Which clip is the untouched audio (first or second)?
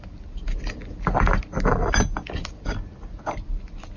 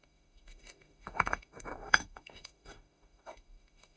first